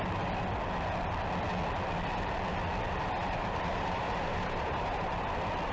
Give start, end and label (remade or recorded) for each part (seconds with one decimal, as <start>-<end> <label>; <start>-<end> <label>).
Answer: 0.0-3.2 recorded; 3.2-5.1 remade; 5.1-5.7 recorded